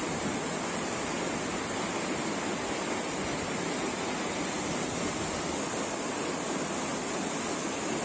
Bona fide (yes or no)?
yes